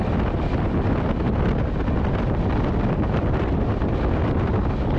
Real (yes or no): yes